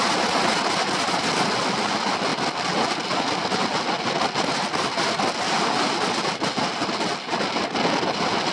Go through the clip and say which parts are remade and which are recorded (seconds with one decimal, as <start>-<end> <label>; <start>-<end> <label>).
0.0-8.5 recorded